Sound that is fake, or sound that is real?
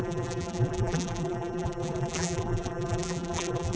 fake